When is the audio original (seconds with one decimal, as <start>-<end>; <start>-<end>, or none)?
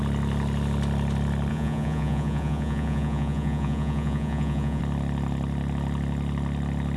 0.0-1.5; 4.8-7.0